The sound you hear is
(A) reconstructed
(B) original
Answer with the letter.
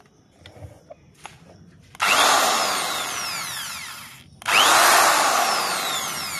B